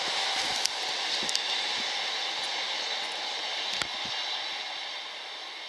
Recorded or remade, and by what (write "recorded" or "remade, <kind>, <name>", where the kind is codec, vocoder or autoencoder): recorded